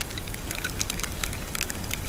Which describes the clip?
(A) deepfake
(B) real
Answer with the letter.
A